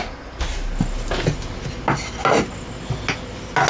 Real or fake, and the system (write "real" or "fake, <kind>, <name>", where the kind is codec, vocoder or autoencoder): real